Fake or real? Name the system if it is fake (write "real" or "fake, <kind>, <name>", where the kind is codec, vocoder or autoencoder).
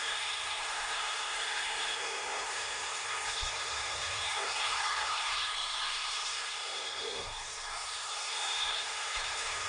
fake, codec, SNAC